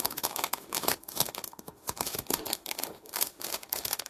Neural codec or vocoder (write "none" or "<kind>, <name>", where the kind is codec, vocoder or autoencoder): autoencoder, DAC-VAE